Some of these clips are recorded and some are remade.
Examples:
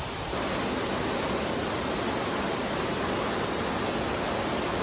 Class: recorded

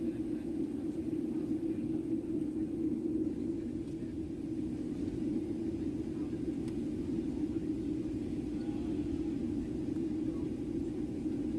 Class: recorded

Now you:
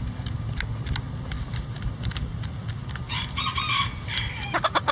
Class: recorded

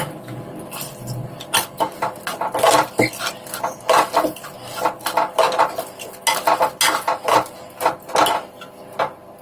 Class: recorded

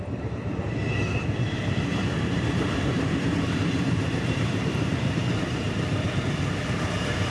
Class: remade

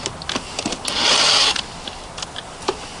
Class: recorded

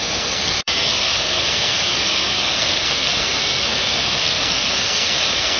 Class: remade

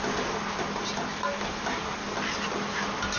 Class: recorded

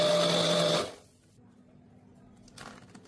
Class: recorded